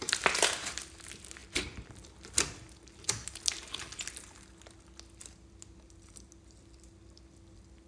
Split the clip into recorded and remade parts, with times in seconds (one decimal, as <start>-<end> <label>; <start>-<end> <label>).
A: 0.0-1.4 recorded; 1.4-3.1 remade; 3.1-7.9 recorded